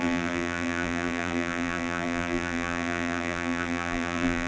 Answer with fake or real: fake